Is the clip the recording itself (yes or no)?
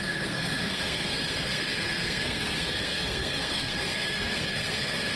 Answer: no